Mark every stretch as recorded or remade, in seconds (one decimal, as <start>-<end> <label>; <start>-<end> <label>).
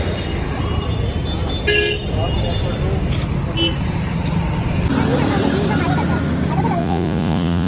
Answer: 0.0-6.8 recorded; 6.8-7.7 remade